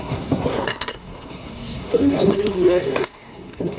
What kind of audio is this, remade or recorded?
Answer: remade